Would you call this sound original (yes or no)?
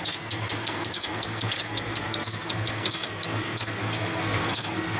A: no